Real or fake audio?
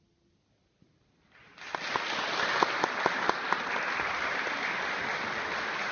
real